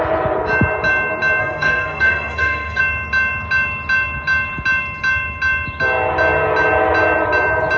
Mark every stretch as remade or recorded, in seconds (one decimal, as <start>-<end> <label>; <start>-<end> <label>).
0.0-1.4 recorded; 1.4-2.8 remade; 2.8-7.8 recorded

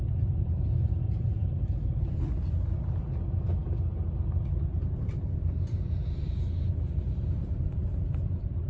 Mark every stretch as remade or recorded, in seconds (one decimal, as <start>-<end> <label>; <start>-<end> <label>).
0.0-8.7 recorded

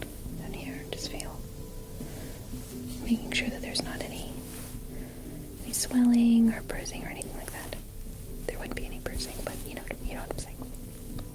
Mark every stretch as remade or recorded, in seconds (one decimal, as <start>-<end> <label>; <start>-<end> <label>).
0.0-11.3 recorded

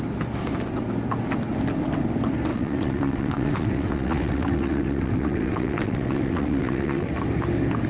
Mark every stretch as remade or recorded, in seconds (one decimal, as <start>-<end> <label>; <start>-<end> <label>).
0.0-2.5 recorded; 2.5-7.1 remade; 7.1-7.9 recorded

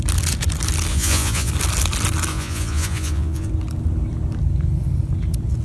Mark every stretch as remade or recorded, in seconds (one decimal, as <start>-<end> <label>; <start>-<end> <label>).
0.0-0.9 recorded; 0.9-1.5 remade; 1.5-2.3 recorded; 2.3-3.5 remade; 3.5-5.6 recorded

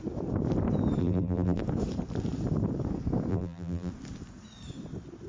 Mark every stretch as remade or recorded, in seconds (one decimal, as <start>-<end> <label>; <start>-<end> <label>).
0.0-1.0 recorded; 1.0-1.6 remade; 1.6-3.3 recorded; 3.3-3.9 remade; 3.9-5.3 recorded

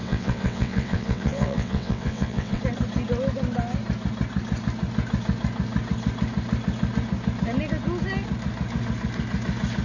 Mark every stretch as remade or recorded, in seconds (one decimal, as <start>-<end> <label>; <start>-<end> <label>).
0.0-2.6 remade; 2.6-9.8 recorded